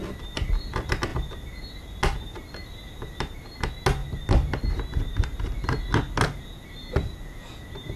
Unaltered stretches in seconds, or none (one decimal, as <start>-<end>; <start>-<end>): 0.0-8.0